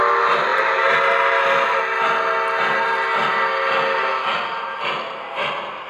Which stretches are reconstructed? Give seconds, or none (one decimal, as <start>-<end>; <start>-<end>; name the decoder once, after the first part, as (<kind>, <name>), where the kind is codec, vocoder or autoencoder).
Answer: none